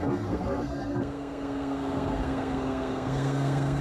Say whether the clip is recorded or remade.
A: remade